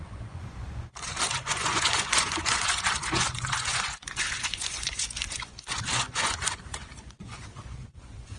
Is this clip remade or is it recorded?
remade